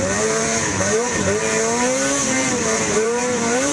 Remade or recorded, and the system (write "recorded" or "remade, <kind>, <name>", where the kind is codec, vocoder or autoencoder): remade, vocoder, BigVGAN v2